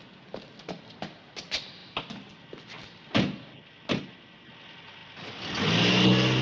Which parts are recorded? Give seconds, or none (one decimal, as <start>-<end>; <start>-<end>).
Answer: 0.0-6.4